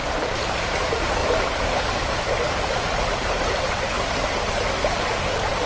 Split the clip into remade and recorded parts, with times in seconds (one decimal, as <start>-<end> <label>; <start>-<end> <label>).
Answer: 0.0-0.6 remade; 0.6-1.2 recorded; 1.2-3.6 remade; 3.6-5.7 recorded